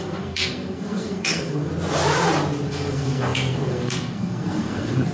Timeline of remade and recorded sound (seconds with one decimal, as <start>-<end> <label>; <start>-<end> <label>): 0.0-1.7 remade; 1.7-2.7 recorded; 2.7-5.1 remade